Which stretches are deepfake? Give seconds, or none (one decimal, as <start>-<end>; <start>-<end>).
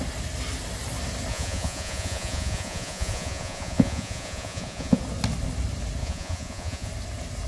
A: 1.3-5.0; 6.0-6.9